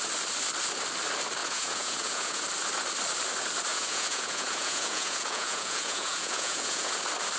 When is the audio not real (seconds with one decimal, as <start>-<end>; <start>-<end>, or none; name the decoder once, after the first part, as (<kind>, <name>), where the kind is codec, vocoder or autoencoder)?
1.4-2.4 (vocoder, Vocos); 3.7-7.0